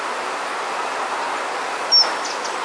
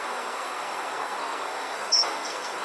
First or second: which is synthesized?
second